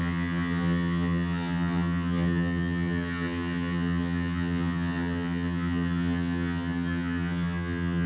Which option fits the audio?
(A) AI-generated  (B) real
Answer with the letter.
A